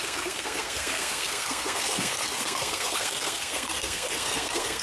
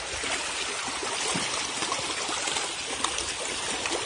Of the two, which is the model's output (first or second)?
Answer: first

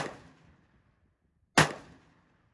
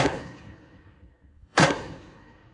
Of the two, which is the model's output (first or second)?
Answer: second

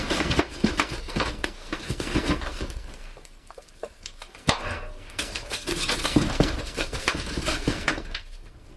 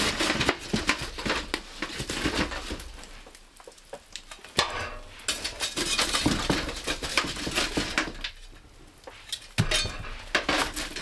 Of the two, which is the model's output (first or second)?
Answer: first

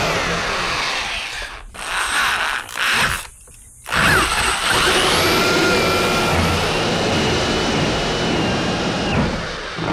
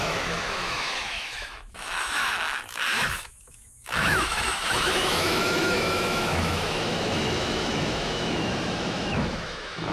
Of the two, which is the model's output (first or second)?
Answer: second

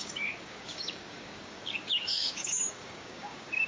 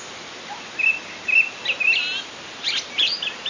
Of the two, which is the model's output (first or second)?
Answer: first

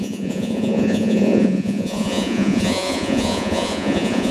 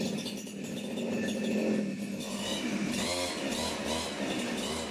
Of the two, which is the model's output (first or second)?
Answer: first